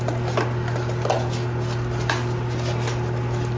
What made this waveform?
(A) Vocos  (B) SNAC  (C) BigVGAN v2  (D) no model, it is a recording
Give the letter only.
D